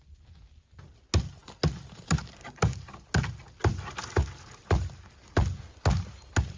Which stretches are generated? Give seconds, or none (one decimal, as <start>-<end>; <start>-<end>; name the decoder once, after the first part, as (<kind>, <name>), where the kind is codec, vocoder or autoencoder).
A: none